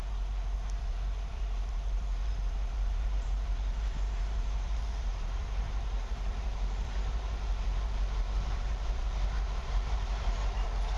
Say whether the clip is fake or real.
fake